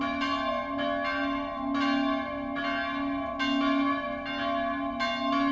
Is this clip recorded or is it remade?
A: recorded